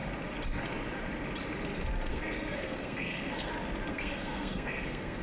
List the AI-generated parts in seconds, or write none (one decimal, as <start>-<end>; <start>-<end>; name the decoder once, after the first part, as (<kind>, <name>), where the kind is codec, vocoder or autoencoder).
2.1-3.5 (codec, SNAC); 3.9-5.2